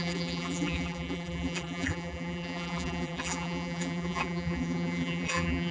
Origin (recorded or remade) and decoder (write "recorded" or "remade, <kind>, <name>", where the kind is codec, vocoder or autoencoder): remade, vocoder, BigVGAN v2